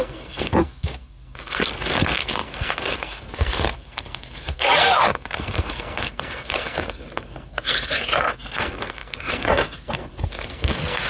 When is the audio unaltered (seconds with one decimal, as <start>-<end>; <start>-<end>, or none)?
none